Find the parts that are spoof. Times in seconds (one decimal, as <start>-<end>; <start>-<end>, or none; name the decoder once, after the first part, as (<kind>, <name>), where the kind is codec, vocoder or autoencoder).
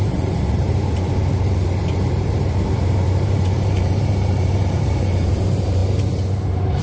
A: 0.0-6.8 (vocoder, BigVGAN v2)